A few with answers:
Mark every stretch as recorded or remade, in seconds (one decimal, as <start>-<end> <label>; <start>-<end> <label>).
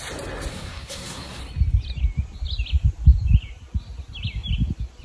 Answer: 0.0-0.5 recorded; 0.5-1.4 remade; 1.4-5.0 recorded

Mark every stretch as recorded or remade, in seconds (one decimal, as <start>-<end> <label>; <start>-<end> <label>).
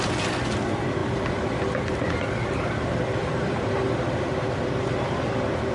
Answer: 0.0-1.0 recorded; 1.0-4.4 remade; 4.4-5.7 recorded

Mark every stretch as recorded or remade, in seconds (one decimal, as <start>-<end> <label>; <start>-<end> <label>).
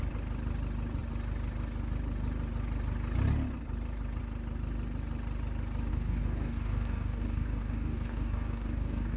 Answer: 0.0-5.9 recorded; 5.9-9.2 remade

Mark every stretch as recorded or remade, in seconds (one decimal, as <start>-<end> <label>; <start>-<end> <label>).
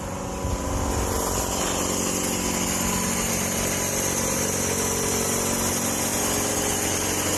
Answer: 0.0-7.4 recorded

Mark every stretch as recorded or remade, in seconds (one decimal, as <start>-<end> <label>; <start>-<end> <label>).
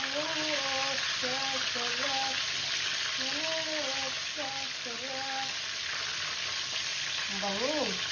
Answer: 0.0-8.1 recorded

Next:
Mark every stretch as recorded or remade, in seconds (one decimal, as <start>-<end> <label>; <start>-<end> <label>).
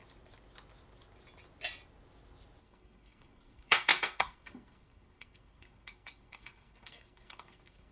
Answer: 0.0-2.6 recorded; 2.6-7.9 remade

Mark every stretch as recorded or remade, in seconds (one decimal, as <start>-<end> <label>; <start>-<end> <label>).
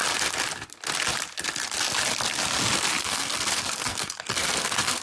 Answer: 0.0-3.0 recorded; 3.0-5.0 remade